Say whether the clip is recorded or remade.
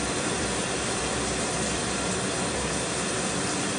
remade